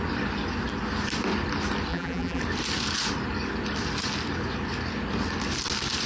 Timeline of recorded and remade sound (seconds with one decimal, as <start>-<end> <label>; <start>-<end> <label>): 0.0-1.9 recorded; 1.9-2.4 remade; 2.4-6.1 recorded